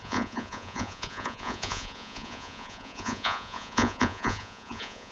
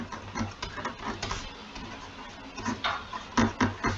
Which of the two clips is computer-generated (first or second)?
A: first